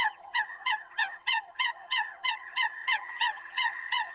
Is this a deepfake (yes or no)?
yes